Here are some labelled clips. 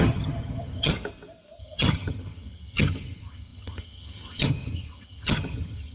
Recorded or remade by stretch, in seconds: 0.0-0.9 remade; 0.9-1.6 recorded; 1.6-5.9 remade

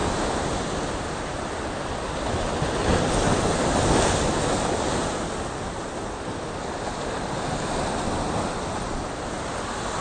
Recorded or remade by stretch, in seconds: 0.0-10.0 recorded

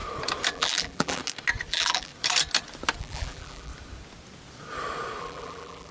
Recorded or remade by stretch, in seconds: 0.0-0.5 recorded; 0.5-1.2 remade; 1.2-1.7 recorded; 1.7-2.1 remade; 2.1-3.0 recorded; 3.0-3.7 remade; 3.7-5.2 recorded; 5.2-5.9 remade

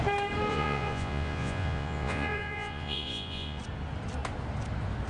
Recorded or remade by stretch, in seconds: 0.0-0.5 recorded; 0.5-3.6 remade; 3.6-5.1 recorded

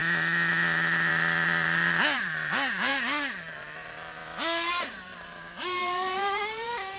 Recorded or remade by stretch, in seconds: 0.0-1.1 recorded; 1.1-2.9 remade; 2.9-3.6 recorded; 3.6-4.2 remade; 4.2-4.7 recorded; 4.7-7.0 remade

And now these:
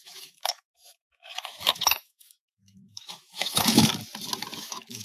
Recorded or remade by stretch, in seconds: 0.0-3.9 remade; 3.9-4.6 recorded; 4.6-5.0 remade

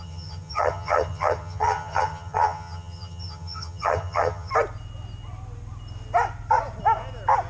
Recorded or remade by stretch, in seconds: 0.0-4.5 remade; 4.5-7.5 recorded

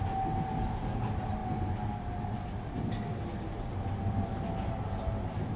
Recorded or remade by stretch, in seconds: 0.0-5.6 recorded